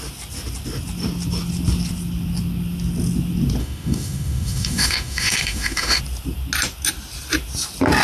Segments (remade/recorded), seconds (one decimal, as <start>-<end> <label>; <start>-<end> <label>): 0.0-3.6 recorded; 3.6-6.0 remade; 6.0-8.0 recorded